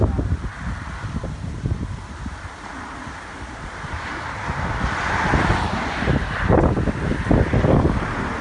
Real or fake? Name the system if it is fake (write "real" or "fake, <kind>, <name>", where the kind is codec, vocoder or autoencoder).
real